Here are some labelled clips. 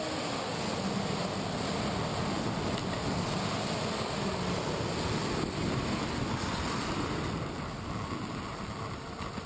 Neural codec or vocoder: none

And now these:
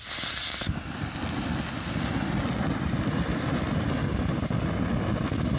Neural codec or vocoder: none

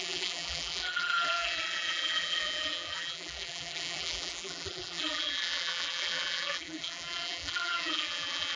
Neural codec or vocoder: vocoder, BigVGAN v2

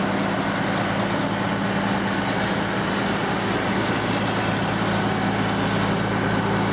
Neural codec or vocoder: none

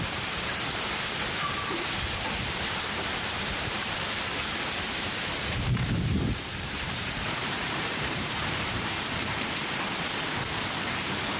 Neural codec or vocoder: vocoder, BigVGAN v2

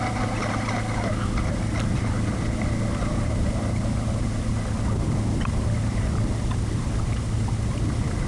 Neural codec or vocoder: none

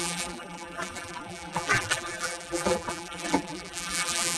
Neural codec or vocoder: vocoder, BigVGAN v2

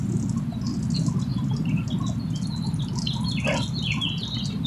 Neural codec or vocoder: none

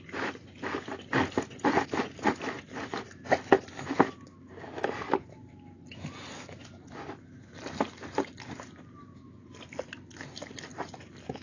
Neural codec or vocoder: none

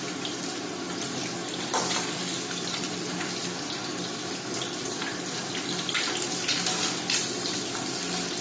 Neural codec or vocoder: none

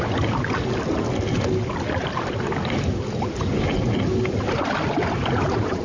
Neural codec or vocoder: none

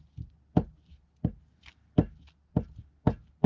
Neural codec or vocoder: none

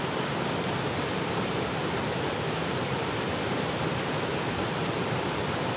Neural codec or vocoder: vocoder, BigVGAN v2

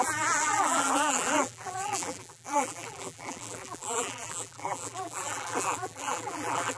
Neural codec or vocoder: vocoder, BigVGAN v2